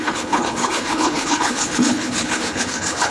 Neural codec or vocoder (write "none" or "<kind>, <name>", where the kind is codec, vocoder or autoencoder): codec, HILCodec